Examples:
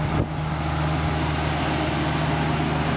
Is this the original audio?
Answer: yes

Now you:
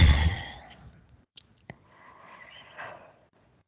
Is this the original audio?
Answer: no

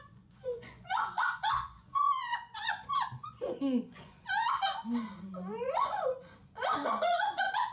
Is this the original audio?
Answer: no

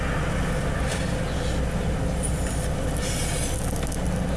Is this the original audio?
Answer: yes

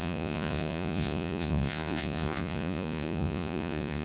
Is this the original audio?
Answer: no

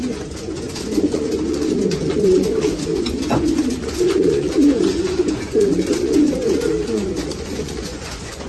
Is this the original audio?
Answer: no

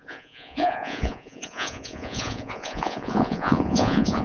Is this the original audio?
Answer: no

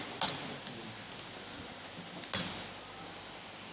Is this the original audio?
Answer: yes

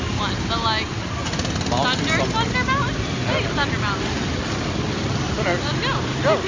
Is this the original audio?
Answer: yes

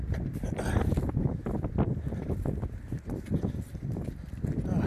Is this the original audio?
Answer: yes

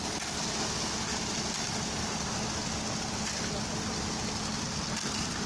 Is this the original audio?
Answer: yes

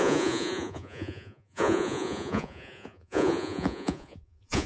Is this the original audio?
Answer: no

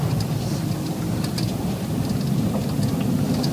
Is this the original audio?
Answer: yes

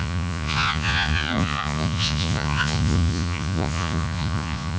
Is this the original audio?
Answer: no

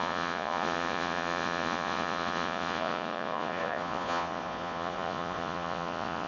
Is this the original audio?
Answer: no